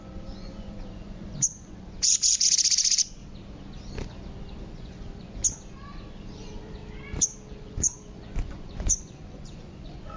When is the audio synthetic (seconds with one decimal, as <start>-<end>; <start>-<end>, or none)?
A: 0.0-3.2; 4.7-5.4; 5.9-6.8; 7.5-10.2